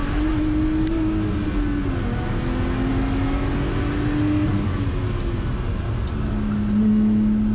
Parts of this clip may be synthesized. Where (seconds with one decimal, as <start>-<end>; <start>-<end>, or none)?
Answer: none